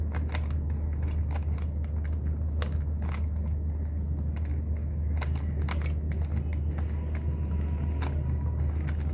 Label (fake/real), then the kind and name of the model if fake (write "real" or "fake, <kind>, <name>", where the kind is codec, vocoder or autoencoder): real